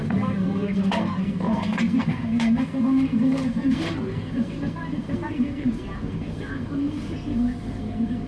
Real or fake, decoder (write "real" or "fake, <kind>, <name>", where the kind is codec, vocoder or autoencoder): fake, codec, SNAC